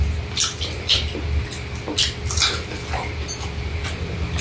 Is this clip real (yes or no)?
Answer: yes